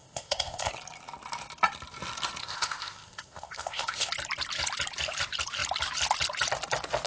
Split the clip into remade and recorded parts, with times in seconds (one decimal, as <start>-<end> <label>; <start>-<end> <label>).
0.0-0.7 remade; 0.7-2.4 recorded; 2.4-4.1 remade; 4.1-7.1 recorded